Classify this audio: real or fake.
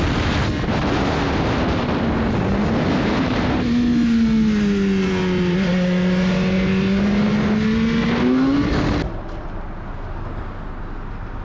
real